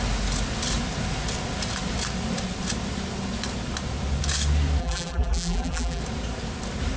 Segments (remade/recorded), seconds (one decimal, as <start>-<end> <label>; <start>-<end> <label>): 0.0-4.8 recorded; 4.8-6.0 remade; 6.0-7.0 recorded